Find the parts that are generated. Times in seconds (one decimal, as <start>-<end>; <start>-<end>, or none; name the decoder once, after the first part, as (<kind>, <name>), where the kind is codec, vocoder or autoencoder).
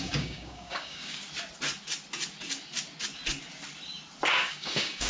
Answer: 0.0-1.2 (codec, DAC); 4.3-5.1